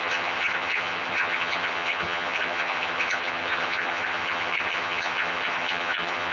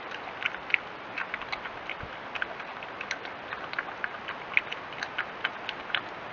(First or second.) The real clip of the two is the second